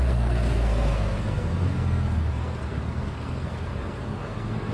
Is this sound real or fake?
fake